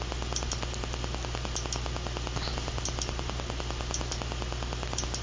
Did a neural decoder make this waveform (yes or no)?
no